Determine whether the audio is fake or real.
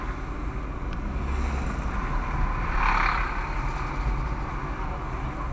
real